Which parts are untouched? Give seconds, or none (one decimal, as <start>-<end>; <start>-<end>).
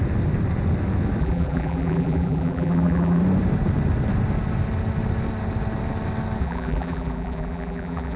0.0-1.2; 3.2-6.4